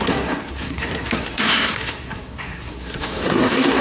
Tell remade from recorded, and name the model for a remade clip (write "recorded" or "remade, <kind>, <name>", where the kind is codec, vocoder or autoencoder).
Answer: remade, codec, SNAC